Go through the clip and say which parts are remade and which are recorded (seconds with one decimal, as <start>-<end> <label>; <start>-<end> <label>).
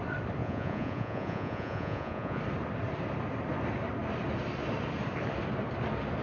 0.0-0.4 recorded; 0.4-2.4 remade; 2.4-6.2 recorded